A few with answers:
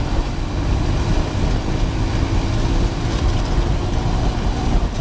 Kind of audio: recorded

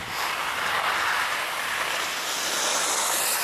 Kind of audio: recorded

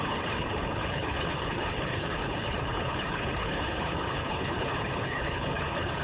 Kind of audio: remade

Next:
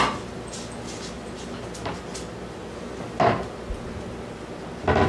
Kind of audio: recorded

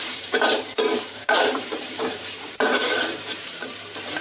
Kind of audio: remade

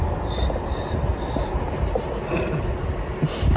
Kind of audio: recorded